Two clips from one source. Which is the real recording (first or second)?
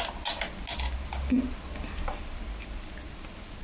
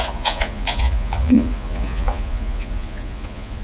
first